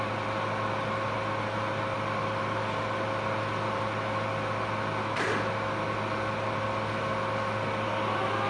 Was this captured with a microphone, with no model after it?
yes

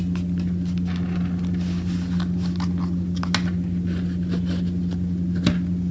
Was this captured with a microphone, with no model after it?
yes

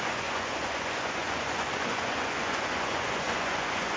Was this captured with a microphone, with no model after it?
no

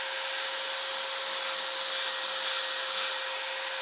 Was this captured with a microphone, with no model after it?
yes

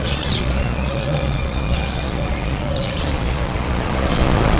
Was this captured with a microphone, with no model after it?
no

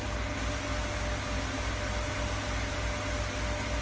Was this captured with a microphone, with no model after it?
yes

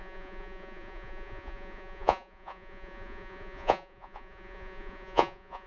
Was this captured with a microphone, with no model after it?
no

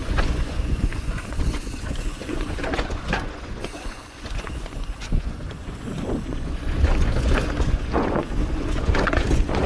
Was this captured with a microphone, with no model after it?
no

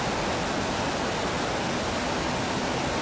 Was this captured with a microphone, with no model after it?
yes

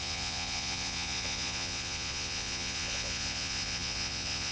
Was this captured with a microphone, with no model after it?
no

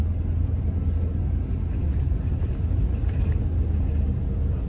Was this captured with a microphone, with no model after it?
yes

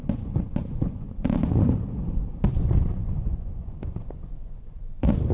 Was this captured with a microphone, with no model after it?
no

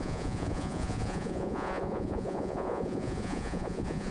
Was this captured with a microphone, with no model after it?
no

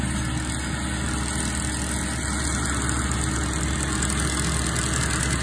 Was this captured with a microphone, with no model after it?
yes